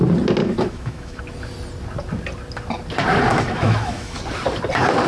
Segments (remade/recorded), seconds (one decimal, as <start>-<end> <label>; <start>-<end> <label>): 0.0-0.4 recorded; 0.4-1.2 remade; 1.2-3.3 recorded; 3.3-4.2 remade; 4.2-5.1 recorded